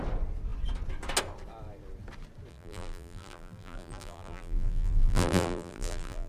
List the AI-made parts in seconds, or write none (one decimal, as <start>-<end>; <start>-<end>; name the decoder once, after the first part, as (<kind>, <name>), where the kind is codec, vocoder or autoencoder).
2.5-6.3 (vocoder, BigVGAN v2)